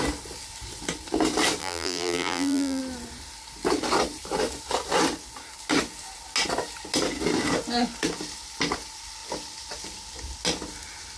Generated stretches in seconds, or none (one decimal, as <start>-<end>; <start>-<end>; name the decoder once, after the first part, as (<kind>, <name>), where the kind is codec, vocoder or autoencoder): 1.6-2.8 (vocoder, BigVGAN v2)